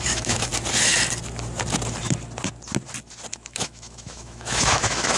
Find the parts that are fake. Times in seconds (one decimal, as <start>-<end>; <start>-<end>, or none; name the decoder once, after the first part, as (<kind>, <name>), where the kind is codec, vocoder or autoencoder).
0.0-0.5 (autoencoder, DAC-VAE); 3.3-5.2